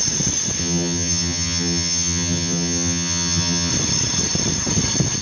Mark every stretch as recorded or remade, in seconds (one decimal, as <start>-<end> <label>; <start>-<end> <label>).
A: 0.0-0.6 recorded; 0.6-3.7 remade; 3.7-5.2 recorded